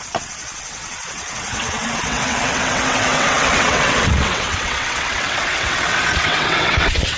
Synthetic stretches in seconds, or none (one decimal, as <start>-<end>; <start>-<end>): 0.0-7.2